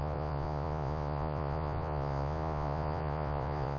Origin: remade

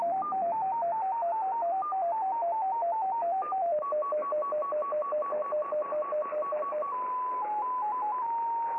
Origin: recorded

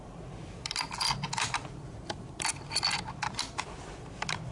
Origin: remade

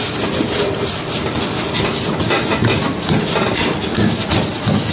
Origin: recorded